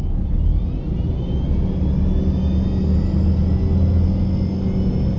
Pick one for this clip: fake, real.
real